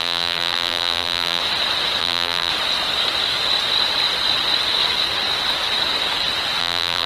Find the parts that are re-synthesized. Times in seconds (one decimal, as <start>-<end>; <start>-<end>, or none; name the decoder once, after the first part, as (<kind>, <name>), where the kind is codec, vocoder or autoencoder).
0.0-1.4 (vocoder, BigVGAN v2); 2.0-2.5; 6.6-7.1